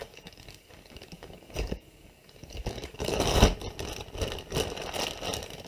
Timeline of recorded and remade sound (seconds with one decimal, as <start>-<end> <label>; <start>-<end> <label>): 0.0-3.4 remade; 3.4-5.7 recorded